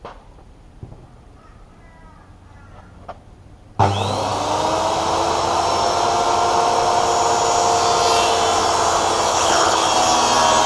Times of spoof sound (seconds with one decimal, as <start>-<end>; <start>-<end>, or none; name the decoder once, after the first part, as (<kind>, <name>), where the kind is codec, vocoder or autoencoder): 9.3-9.9 (codec, HILCodec)